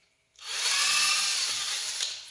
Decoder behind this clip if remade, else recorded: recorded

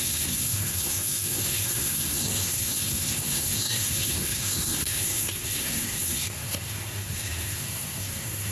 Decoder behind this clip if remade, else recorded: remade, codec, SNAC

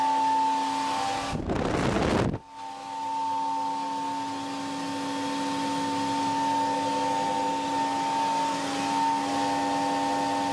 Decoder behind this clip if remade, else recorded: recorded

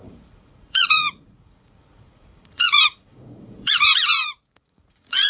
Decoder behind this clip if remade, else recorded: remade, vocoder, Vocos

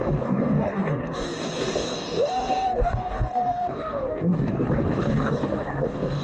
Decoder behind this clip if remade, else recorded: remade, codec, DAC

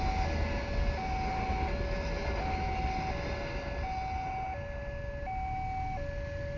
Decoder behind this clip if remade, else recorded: recorded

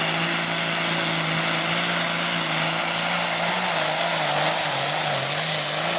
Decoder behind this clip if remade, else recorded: recorded